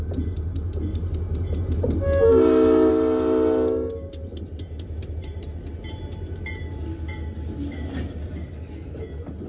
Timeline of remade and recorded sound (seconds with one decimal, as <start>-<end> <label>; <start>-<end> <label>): 0.0-2.3 recorded; 2.3-2.9 remade; 2.9-9.5 recorded